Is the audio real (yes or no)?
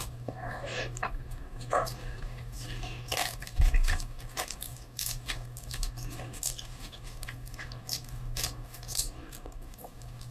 no